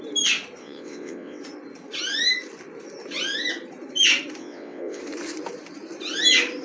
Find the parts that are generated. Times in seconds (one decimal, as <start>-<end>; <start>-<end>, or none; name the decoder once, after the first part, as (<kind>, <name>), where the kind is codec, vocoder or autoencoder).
0.6-1.4 (vocoder, WaveNeXt); 4.4-5.0